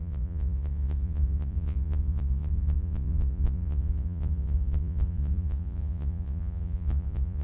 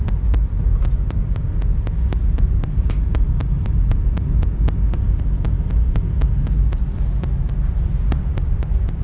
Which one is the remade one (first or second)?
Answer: first